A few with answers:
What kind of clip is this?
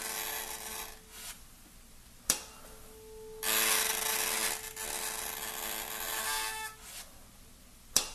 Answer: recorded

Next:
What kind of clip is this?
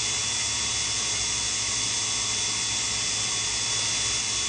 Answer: recorded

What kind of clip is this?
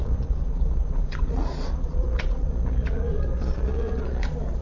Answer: remade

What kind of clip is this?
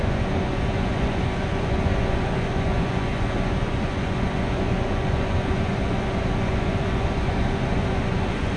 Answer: remade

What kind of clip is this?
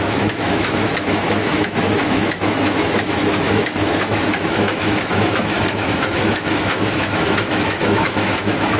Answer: remade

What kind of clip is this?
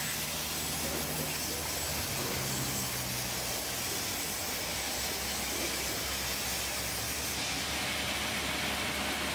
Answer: recorded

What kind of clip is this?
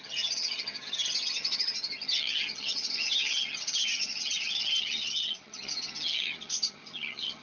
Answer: remade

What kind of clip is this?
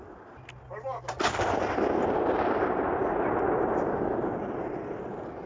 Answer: recorded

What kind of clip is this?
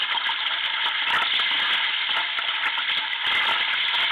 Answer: recorded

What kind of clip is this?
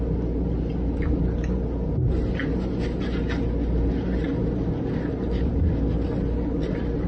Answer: recorded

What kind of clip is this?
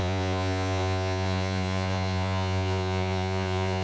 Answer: remade